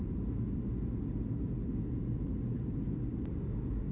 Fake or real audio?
real